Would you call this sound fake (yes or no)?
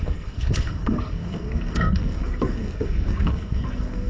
yes